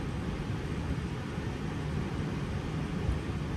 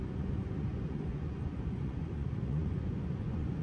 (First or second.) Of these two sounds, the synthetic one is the second